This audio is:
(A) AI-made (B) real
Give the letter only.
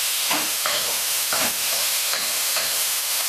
A